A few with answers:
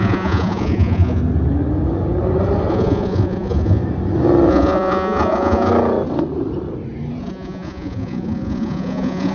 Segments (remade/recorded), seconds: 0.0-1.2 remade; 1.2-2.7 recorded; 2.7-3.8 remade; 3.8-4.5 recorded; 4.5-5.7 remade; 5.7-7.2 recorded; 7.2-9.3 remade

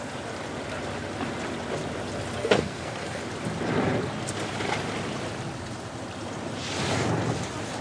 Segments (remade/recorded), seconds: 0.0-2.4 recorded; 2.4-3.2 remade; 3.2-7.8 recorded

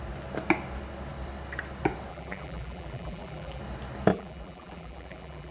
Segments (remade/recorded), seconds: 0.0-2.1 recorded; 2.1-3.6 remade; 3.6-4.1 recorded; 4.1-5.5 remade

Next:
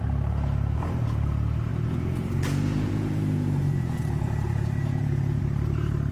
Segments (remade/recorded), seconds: 0.0-1.7 recorded; 1.7-5.4 remade; 5.4-6.1 recorded